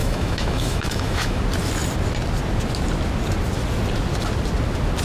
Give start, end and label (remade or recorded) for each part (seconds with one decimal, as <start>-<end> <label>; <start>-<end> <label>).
0.0-1.4 remade; 1.4-5.0 recorded

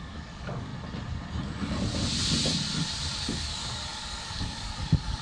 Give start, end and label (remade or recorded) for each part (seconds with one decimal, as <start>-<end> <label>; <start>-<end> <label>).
0.0-0.7 remade; 0.7-3.2 recorded; 3.2-5.2 remade

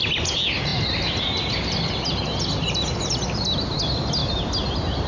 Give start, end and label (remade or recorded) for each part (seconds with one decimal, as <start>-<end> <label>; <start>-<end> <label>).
0.0-0.7 recorded; 0.7-3.8 remade; 3.8-5.1 recorded

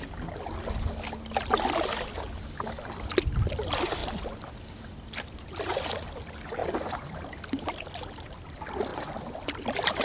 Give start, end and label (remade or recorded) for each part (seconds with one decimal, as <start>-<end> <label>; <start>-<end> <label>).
0.0-10.0 recorded